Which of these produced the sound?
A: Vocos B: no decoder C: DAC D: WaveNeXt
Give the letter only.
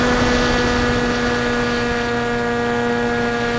B